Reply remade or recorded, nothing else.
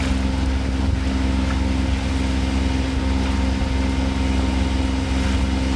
recorded